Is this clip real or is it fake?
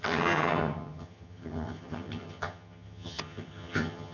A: fake